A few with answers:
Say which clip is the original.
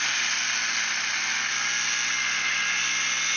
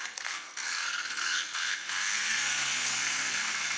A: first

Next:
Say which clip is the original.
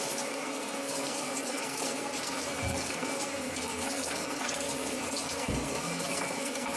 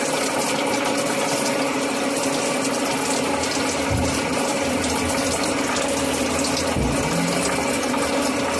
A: second